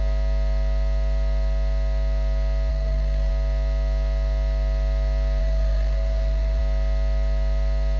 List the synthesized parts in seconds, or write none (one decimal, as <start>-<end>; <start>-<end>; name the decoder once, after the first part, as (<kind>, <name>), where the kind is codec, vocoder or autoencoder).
2.7-3.3 (codec, SNAC); 5.4-6.6